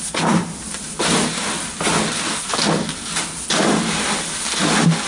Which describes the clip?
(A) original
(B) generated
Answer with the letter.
A